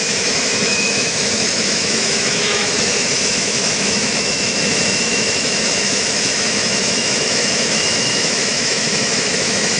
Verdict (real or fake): fake